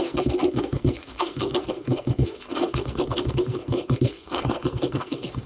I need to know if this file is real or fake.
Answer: fake